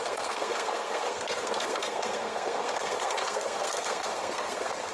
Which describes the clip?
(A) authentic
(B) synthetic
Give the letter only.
B